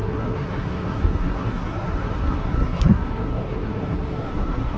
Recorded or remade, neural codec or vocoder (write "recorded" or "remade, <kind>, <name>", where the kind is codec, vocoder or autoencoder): remade, codec, SNAC